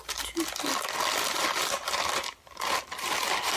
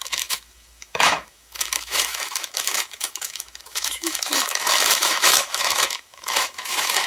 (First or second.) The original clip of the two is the first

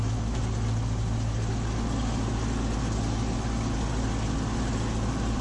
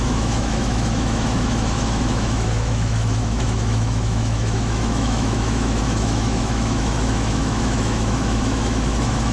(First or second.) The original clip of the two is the first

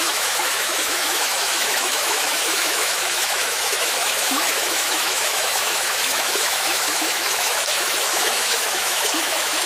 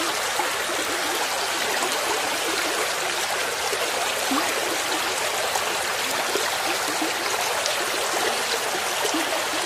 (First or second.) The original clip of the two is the second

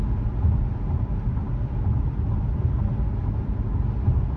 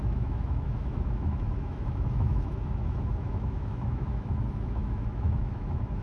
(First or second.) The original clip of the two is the first